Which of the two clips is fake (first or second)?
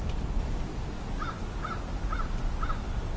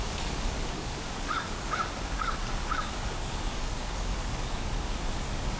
second